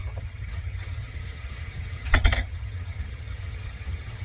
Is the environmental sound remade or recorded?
remade